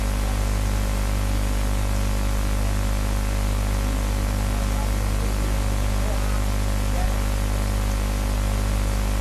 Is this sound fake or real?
real